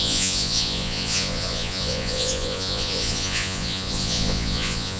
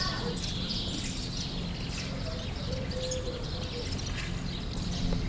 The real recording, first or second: second